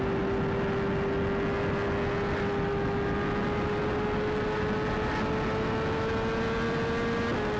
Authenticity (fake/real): real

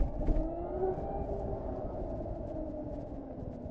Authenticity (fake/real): real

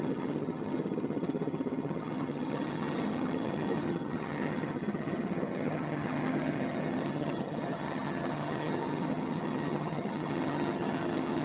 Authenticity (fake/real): fake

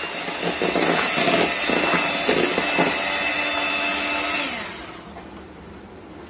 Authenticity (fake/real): real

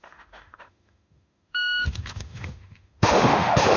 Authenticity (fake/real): fake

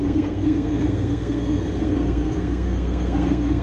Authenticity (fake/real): fake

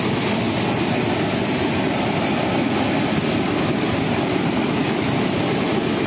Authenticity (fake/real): real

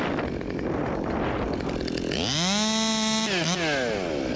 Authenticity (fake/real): real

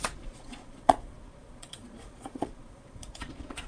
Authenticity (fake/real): fake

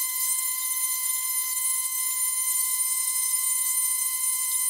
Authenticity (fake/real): fake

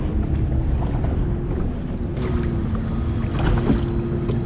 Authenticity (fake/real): real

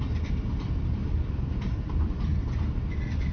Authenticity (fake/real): real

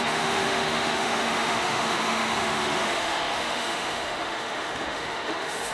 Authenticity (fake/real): fake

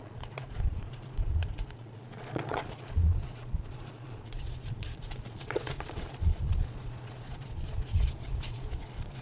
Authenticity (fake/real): fake